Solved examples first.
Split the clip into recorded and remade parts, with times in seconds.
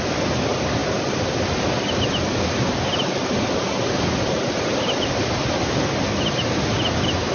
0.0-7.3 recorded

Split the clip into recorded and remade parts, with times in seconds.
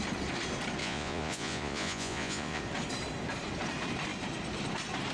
0.0-0.8 recorded; 0.8-2.6 remade; 2.6-5.1 recorded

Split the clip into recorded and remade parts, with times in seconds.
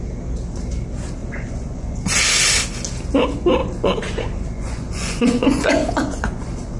0.0-1.2 recorded; 1.2-2.0 remade; 2.0-3.6 recorded; 3.6-6.8 remade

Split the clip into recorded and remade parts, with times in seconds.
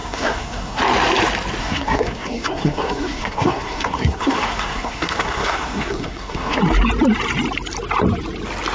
0.0-0.8 remade; 0.8-1.6 recorded; 1.6-6.6 remade; 6.6-8.7 recorded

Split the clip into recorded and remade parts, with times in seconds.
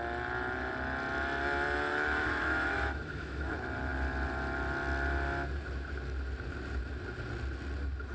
0.0-1.9 recorded; 1.9-3.5 remade; 3.5-8.1 recorded